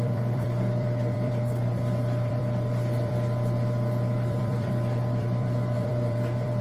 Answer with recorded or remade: remade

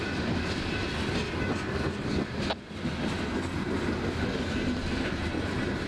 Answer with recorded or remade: recorded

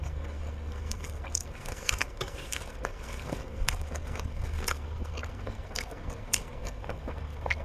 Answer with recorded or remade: remade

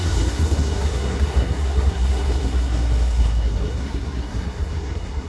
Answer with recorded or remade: remade